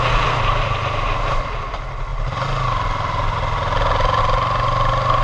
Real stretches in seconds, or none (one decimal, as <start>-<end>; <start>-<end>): 0.0-5.2